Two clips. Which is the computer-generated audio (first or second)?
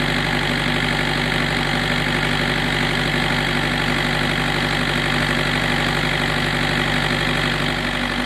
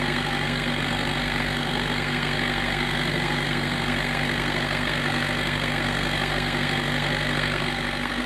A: second